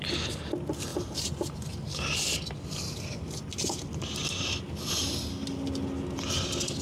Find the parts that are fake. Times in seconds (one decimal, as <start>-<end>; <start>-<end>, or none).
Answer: none